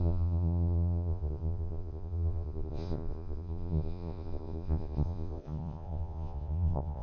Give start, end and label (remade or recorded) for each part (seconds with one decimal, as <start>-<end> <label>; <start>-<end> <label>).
0.0-7.0 remade